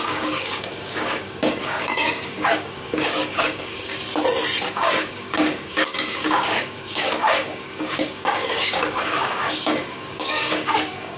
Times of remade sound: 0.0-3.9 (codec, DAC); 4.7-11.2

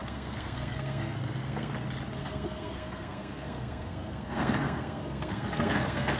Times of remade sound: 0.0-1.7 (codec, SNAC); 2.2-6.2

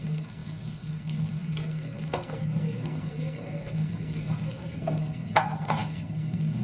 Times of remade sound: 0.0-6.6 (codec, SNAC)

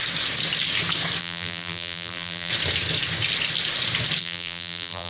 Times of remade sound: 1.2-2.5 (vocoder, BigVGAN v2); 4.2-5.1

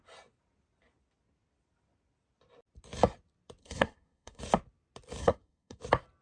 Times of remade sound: 3.6-4.4 (codec, SNAC); 5.2-5.8

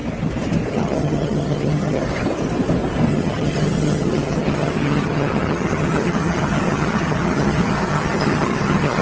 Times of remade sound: 0.7-2.0 (vocoder, HiFi-GAN); 3.1-9.0

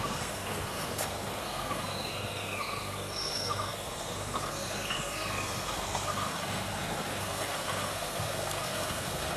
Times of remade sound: 0.0-9.4 (codec, SNAC)